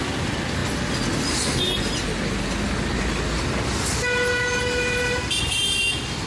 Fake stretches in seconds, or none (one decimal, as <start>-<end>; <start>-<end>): none